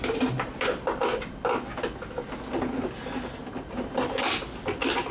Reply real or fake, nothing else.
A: real